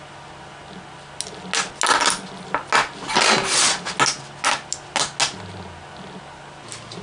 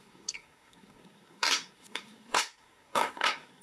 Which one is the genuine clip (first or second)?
first